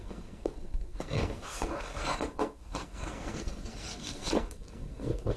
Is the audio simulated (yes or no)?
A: yes